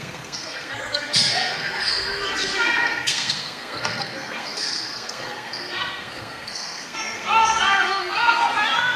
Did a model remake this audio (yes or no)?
yes